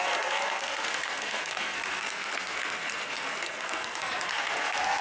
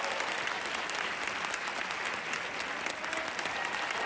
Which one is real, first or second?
second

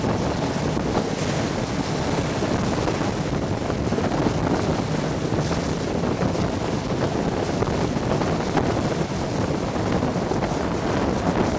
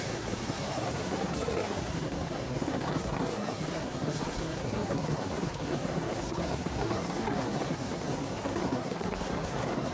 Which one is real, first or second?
first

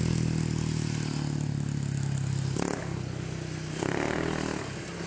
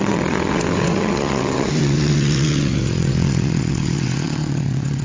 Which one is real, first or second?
first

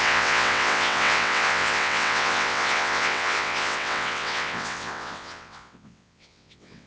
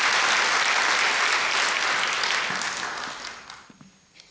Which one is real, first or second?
second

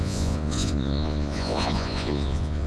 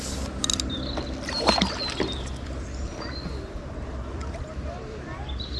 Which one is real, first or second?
second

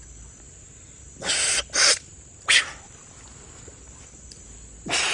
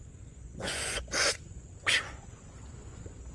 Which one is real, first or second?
first